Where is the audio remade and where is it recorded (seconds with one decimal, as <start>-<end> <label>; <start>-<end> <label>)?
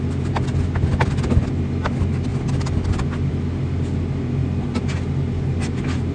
0.0-6.1 recorded